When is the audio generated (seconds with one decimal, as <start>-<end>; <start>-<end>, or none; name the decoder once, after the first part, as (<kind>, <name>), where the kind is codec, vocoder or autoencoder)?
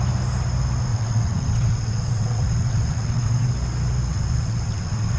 0.9-3.5 (vocoder, WaveNeXt); 4.1-5.2